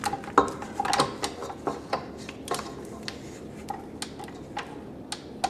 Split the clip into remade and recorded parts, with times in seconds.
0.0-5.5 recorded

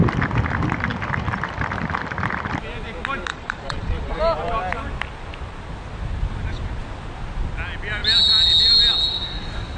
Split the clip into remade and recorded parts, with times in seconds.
0.0-3.3 recorded; 3.3-4.2 remade; 4.2-9.8 recorded

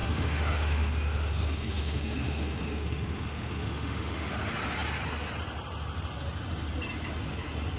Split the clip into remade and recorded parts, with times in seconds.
0.0-4.3 remade; 4.3-7.8 recorded

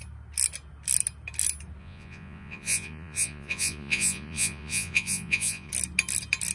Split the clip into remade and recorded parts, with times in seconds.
0.0-1.8 recorded; 1.8-5.7 remade; 5.7-6.5 recorded